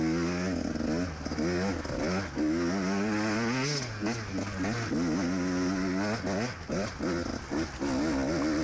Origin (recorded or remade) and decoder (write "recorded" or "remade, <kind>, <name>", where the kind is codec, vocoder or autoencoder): recorded